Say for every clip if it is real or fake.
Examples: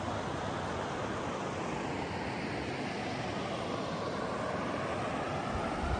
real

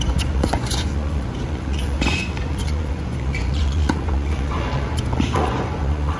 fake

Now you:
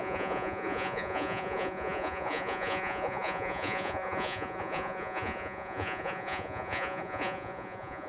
fake